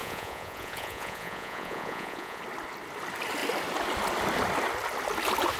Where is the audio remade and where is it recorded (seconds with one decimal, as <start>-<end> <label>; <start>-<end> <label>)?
0.0-2.4 remade; 2.4-5.6 recorded